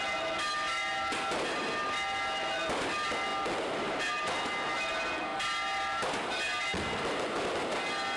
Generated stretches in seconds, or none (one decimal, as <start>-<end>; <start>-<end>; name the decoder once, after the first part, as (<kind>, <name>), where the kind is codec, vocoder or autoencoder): none